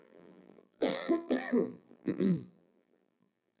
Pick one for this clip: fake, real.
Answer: fake